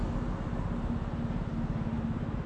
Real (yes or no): yes